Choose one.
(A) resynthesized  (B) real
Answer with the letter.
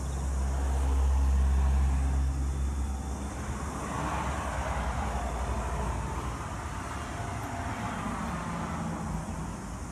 B